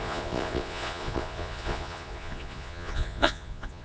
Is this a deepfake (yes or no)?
yes